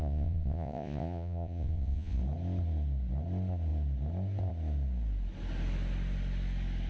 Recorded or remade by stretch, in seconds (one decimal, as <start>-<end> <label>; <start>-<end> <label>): 0.0-2.2 remade; 2.2-6.9 recorded